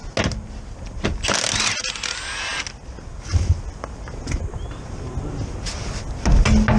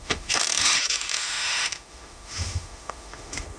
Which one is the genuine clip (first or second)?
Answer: first